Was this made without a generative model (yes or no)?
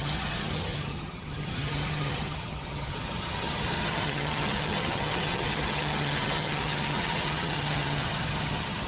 no